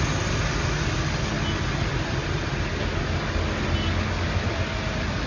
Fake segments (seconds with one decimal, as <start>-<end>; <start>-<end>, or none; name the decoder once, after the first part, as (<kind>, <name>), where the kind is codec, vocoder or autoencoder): none